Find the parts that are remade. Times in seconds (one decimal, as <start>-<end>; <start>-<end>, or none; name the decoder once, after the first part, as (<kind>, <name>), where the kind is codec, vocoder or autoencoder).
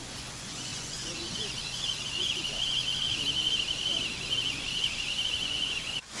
0.0-2.8 (vocoder, Vocos); 4.3-6.2